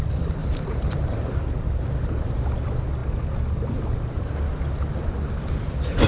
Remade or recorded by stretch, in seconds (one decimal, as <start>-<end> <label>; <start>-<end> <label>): 0.0-0.4 recorded; 0.4-1.1 remade; 1.1-6.1 recorded